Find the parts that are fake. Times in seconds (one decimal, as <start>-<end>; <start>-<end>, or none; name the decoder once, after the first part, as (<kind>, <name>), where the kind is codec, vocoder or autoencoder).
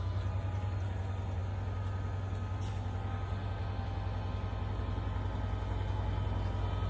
none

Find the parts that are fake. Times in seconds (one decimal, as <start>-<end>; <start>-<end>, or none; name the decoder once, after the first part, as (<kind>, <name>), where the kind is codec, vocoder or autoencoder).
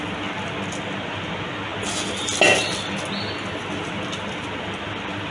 none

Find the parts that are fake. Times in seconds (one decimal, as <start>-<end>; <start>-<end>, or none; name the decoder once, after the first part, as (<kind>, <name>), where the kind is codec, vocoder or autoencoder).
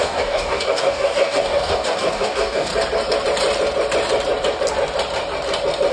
0.0-2.7 (codec, DAC)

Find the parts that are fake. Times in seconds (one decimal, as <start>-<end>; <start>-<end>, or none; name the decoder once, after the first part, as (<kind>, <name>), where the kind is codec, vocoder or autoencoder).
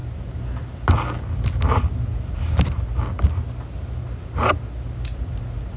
none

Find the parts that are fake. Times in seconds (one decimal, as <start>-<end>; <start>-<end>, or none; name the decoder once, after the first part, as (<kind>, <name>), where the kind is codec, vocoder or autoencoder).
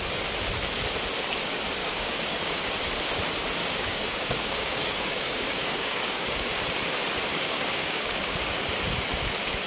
1.8-2.7 (codec, DAC); 3.6-6.6; 7.3-8.6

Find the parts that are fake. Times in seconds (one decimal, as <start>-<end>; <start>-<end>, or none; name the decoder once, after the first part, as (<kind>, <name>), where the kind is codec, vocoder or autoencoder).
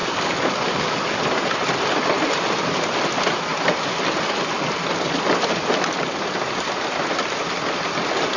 0.0-1.2 (codec, DAC)